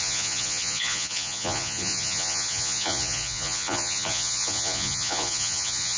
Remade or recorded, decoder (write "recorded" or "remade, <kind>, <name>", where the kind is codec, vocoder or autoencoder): remade, vocoder, Vocos